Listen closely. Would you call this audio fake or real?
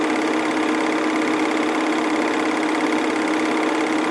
real